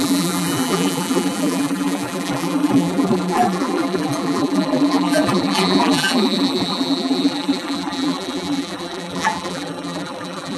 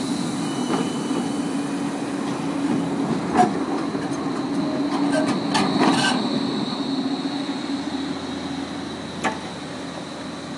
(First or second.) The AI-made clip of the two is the first